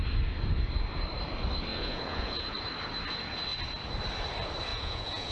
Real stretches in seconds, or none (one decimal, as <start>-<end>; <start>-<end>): 0.0-1.7; 2.6-4.7